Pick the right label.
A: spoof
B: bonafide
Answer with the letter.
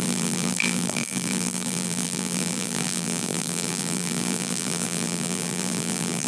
A